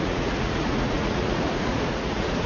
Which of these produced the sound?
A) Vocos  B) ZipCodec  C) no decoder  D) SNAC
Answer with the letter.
A